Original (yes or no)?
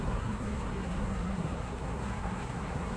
no